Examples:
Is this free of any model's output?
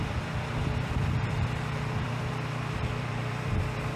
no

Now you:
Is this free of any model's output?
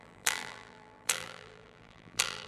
no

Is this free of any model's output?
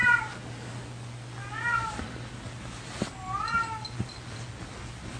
yes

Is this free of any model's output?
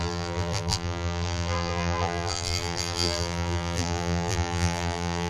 no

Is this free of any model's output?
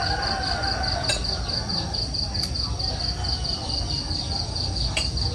yes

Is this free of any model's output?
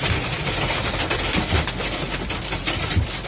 yes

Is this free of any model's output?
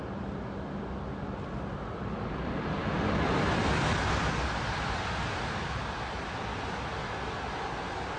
yes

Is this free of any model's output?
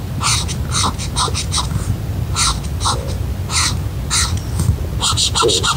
yes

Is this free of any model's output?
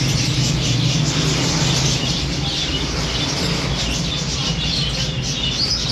yes